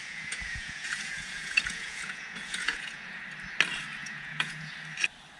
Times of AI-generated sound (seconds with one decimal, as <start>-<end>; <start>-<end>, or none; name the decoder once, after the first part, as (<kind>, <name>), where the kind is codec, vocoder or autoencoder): 0.0-3.2 (vocoder, Vocos); 4.0-4.7